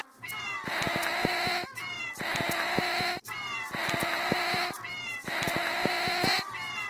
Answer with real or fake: real